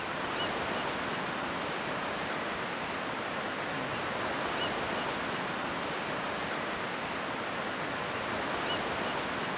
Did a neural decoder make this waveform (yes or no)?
no